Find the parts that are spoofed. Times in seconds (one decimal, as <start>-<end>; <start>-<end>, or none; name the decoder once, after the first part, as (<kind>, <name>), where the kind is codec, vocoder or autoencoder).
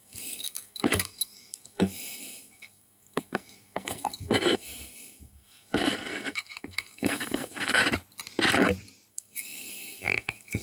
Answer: 0.0-7.8 (codec, SNAC); 9.1-10.6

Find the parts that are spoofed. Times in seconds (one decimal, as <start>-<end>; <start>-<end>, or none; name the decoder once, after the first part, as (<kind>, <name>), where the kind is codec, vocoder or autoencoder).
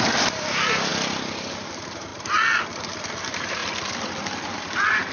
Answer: 0.0-0.9 (vocoder, BigVGAN v2); 1.5-2.1; 3.2-3.6; 4.5-5.1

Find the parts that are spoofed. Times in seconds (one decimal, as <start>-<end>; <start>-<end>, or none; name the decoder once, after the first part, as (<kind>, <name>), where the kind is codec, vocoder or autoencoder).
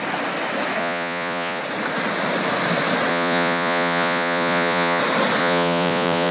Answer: 0.8-1.6 (vocoder, Vocos); 3.1-5.0; 5.4-6.3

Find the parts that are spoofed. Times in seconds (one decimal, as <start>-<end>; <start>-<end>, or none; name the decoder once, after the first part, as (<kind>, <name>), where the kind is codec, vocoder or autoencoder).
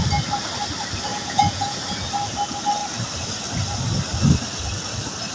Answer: 1.1-1.8 (vocoder, Vocos)